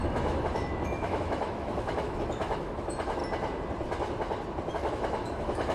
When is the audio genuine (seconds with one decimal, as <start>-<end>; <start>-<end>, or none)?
3.2-4.7